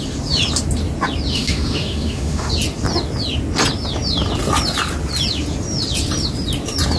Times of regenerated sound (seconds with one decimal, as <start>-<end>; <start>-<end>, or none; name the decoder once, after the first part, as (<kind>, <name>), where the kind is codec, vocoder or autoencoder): 1.3-2.5 (autoencoder, DAC-VAE)